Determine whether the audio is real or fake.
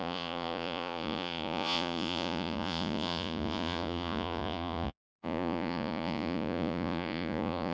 fake